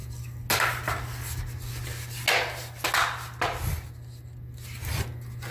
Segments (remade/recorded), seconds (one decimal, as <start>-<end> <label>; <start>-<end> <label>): 0.0-5.5 recorded

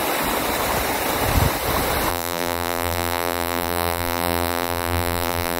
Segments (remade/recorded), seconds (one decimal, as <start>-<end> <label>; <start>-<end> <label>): 0.0-2.1 recorded; 2.1-5.6 remade

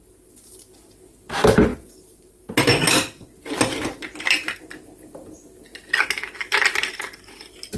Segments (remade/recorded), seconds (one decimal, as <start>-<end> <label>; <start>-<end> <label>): 0.0-7.8 recorded

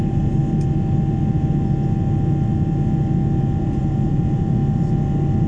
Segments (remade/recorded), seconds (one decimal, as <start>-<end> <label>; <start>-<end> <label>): 0.0-0.4 remade; 0.4-3.6 recorded; 3.6-4.6 remade; 4.6-5.5 recorded

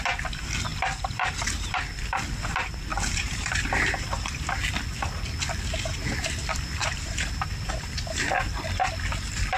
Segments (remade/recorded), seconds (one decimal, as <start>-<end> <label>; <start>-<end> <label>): 0.0-0.7 recorded; 0.7-1.8 remade; 1.8-2.9 recorded; 2.9-4.6 remade; 4.6-6.8 recorded; 6.8-7.9 remade; 7.9-9.6 recorded

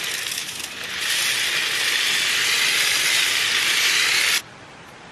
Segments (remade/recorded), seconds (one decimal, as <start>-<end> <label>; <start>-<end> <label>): 0.0-0.4 recorded; 0.4-1.2 remade; 1.2-5.1 recorded